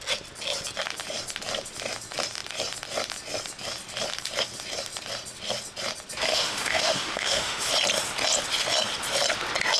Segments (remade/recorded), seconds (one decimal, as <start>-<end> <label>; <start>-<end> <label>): 0.0-6.3 recorded; 6.3-7.7 remade; 7.7-9.8 recorded